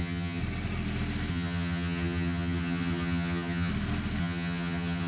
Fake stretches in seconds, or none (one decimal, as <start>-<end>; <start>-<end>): 0.0-0.4; 1.3-3.7; 4.2-5.1